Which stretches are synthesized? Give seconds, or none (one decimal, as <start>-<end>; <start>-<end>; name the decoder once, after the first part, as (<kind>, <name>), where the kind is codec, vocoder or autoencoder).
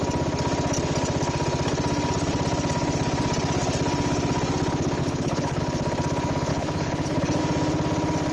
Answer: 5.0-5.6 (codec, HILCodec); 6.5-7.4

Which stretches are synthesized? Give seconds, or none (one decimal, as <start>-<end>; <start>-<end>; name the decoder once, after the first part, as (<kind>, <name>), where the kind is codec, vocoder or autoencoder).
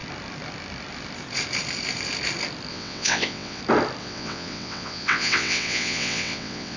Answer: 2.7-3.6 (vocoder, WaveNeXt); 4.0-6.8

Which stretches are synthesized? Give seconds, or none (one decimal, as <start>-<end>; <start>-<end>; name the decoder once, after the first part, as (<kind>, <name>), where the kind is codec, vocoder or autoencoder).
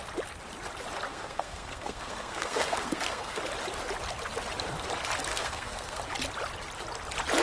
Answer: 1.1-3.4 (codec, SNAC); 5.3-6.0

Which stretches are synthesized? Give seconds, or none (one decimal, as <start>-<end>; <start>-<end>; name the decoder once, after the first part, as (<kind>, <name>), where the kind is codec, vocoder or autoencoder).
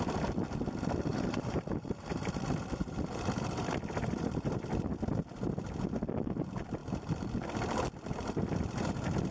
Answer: 1.1-4.9 (vocoder, BigVGAN v2)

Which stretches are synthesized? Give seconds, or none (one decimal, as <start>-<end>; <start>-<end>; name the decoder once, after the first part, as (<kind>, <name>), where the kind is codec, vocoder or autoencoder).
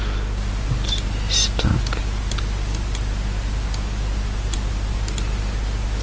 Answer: none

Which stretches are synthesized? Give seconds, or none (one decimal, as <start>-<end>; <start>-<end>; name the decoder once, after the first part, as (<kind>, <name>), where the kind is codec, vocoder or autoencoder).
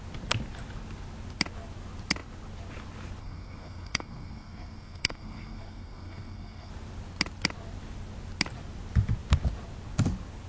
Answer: 3.2-6.7 (codec, SNAC)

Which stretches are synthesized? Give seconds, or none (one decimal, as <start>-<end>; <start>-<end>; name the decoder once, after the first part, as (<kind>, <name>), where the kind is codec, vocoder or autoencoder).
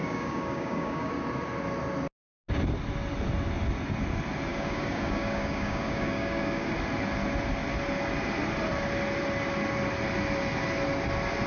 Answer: 0.0-1.1 (codec, DAC); 4.5-6.7